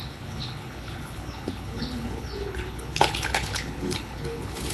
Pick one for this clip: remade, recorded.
remade